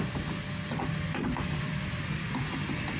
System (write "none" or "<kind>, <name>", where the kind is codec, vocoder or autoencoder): none